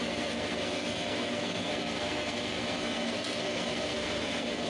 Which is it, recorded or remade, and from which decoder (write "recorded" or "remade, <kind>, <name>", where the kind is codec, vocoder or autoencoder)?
remade, codec, SNAC